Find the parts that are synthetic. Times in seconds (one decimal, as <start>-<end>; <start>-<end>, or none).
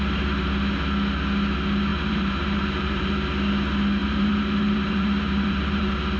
1.9-3.1; 4.0-5.8